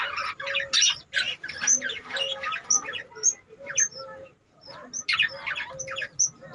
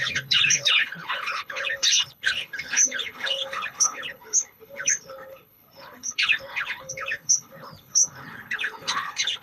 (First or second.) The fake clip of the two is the second